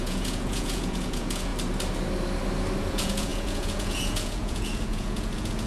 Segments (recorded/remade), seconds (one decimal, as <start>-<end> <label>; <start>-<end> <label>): 0.0-1.5 remade; 1.5-2.8 recorded; 2.8-5.7 remade